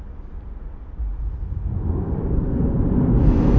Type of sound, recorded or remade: recorded